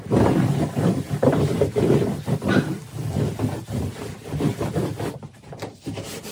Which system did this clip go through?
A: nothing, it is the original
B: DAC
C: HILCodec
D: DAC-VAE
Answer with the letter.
A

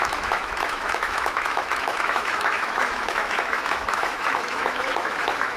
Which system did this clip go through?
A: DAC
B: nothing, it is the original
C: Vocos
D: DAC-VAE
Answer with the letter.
D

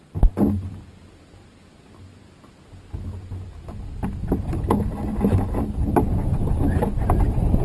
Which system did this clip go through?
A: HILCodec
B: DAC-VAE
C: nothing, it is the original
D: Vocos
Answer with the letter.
C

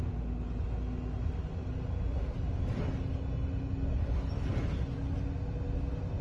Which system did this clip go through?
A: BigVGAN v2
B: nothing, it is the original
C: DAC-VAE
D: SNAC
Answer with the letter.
B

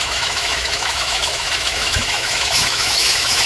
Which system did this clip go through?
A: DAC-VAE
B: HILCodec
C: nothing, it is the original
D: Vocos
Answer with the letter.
A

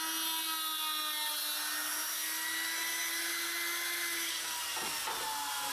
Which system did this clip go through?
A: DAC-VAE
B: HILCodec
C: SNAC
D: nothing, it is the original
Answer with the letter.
D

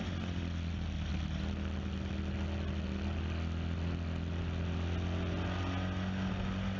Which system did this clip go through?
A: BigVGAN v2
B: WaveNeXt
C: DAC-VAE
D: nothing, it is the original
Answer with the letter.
D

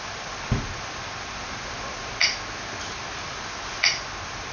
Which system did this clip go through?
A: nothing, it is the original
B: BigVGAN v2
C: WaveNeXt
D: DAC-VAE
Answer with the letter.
A